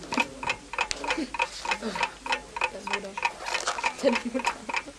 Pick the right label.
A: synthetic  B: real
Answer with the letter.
B